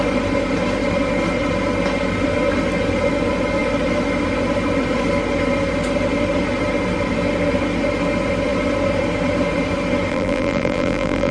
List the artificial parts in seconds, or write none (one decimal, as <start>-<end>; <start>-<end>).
10.1-11.3